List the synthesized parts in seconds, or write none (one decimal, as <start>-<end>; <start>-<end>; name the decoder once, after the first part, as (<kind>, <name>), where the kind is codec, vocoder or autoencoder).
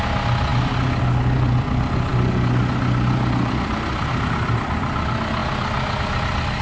none